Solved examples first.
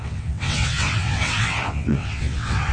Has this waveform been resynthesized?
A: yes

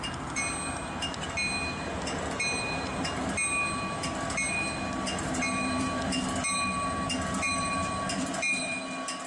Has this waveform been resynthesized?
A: no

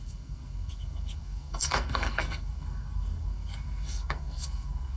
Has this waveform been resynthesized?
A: yes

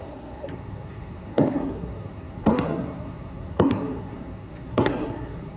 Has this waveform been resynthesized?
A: yes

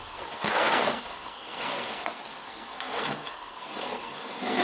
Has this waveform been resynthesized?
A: yes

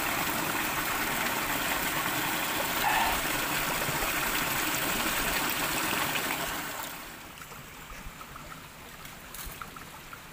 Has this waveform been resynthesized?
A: no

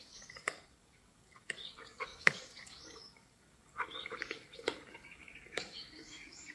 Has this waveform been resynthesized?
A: yes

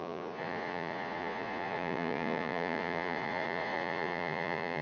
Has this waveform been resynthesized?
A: yes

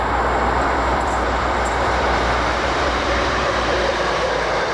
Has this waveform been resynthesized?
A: yes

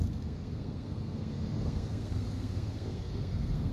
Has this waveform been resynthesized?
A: yes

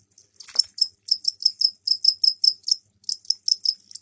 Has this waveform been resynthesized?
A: no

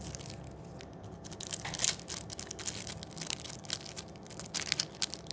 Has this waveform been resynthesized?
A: no